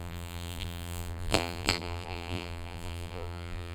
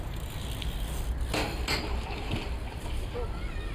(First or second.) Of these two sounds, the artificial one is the first